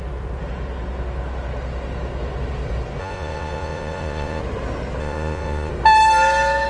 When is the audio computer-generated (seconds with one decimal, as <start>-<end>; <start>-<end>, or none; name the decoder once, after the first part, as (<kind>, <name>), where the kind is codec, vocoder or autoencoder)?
3.0-4.4 (vocoder, Vocos); 5.0-5.7